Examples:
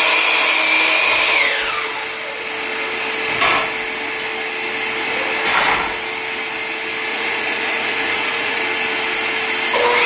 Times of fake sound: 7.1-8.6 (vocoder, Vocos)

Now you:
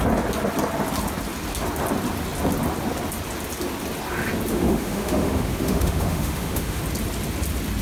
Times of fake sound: 4.5-6.8 (autoencoder, DAC-VAE)

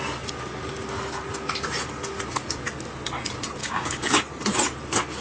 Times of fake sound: 3.6-4.2 (codec, DAC)

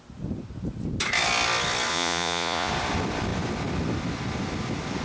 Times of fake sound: 1.9-2.7 (vocoder, Vocos)

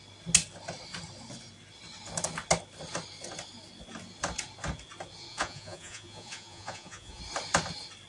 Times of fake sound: 5.3-7.2 (vocoder, Vocos)